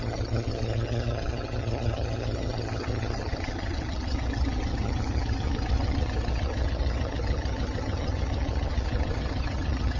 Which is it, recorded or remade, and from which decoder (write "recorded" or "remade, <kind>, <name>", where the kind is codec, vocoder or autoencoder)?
remade, vocoder, HiFi-GAN